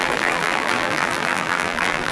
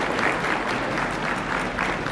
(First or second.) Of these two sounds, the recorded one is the second